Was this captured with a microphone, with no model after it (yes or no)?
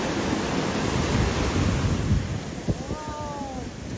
yes